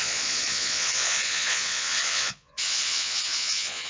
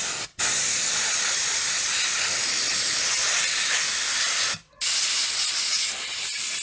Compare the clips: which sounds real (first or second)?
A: second